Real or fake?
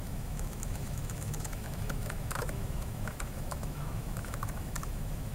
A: fake